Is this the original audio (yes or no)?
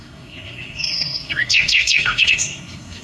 no